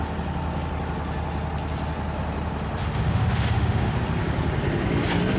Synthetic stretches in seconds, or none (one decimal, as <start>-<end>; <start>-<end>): 2.8-4.0